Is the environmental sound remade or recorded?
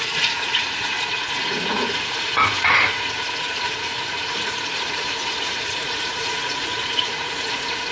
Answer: remade